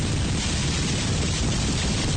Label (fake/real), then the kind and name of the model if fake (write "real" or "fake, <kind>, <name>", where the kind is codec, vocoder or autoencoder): real